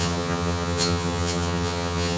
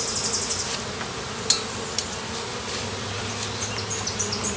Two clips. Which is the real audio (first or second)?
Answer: second